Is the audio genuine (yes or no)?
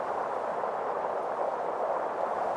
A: yes